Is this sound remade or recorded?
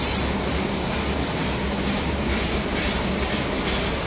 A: recorded